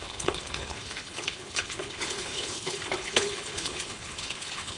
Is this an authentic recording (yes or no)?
no